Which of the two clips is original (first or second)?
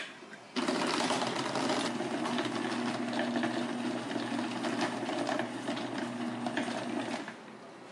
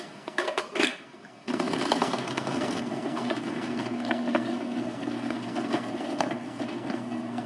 first